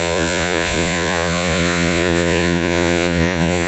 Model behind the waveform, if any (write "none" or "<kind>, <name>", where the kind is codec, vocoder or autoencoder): vocoder, Vocos